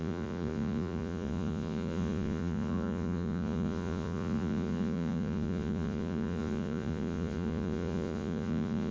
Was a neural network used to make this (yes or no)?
yes